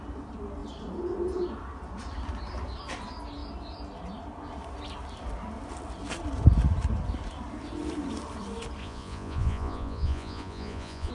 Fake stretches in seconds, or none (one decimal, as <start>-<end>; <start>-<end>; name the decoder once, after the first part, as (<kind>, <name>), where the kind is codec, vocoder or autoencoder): 8.8-11.1 (vocoder, Vocos)